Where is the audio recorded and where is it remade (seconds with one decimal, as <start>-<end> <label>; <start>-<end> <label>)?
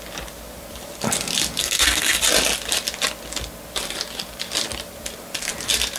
0.0-1.6 recorded; 1.6-2.2 remade; 2.2-6.0 recorded